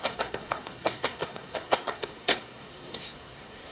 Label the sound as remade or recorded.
remade